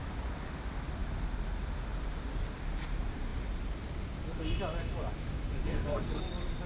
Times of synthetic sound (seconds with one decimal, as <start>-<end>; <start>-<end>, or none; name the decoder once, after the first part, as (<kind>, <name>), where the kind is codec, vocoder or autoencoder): 5.6-6.2 (codec, SNAC)